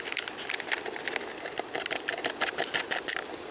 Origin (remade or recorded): recorded